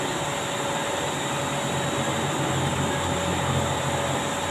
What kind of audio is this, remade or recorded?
recorded